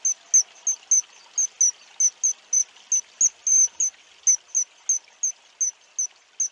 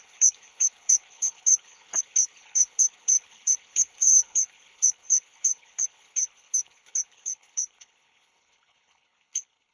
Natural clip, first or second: first